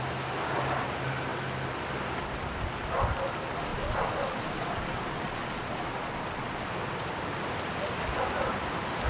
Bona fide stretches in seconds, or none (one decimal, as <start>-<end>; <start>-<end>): 0.0-3.7; 6.7-9.1